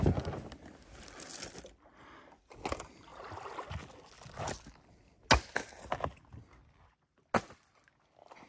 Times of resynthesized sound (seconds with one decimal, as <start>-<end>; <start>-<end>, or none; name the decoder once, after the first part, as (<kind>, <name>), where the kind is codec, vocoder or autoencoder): none